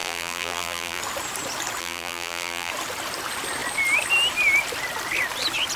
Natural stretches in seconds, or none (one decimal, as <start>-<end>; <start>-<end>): 1.0-1.8; 2.7-5.8